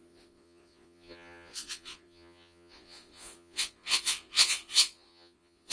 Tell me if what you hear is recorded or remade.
remade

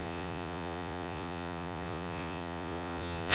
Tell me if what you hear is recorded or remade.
remade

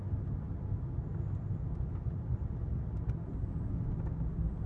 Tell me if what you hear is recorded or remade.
recorded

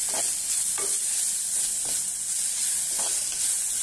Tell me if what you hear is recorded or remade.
recorded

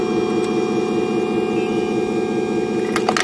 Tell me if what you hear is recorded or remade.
recorded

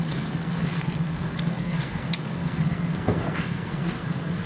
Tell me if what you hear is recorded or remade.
remade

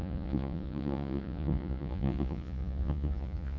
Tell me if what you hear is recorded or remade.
remade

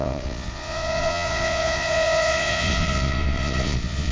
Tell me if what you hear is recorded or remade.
remade